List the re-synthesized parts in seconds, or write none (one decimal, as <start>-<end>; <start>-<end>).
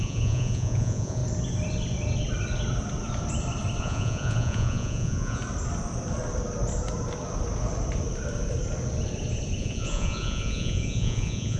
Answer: 0.0-1.2; 3.8-5.4; 9.6-11.6